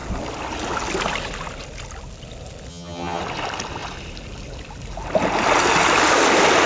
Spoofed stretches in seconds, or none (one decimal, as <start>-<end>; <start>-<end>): 2.7-3.2